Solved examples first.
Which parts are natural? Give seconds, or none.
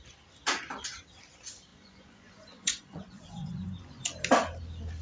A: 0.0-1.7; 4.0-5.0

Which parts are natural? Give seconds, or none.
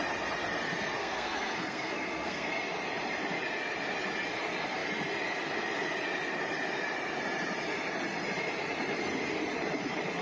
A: 0.0-1.0; 2.5-10.2